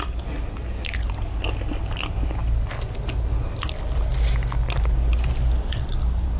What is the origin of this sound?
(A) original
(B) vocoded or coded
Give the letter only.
A